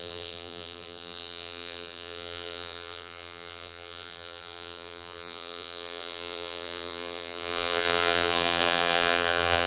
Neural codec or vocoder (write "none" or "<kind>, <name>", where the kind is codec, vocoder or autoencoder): vocoder, BigVGAN v2